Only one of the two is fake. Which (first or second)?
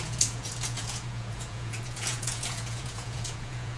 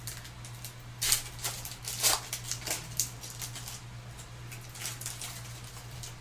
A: first